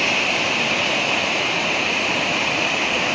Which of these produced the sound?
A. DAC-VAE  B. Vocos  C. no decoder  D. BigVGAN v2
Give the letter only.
C